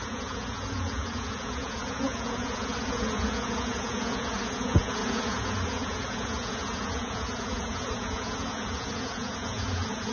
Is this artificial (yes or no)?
yes